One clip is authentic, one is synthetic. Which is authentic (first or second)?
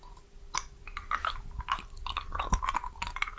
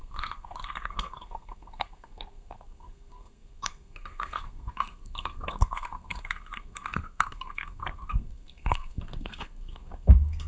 first